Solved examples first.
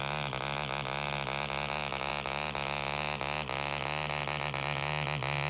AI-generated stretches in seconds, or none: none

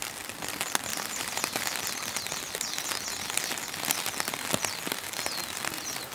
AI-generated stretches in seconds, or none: 0.9-1.8 (vocoder, BigVGAN v2)

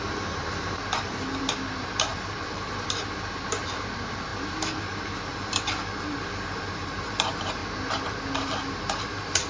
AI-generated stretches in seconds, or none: 0.0-7.6 (vocoder, BigVGAN v2); 8.4-9.5

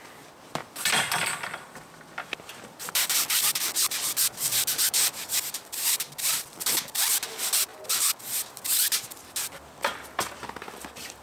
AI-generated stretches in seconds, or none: 0.0-11.2 (vocoder, BigVGAN v2)

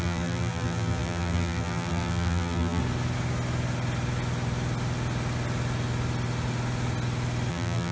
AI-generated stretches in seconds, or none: 0.0-2.8 (vocoder, BigVGAN v2); 7.5-7.9

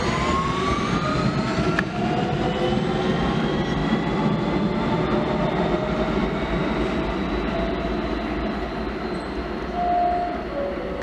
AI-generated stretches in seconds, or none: none

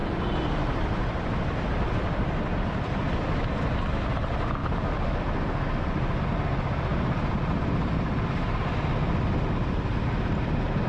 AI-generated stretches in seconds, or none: 0.0-3.5 (vocoder, BigVGAN v2)

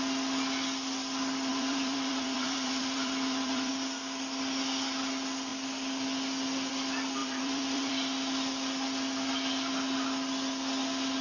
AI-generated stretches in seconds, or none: 1.5-3.7 (vocoder, BigVGAN v2); 7.2-7.9